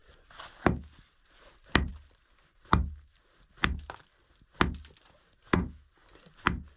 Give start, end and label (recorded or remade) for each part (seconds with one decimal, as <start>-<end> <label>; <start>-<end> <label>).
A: 0.0-6.8 recorded